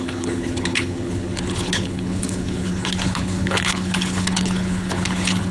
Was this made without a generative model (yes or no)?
no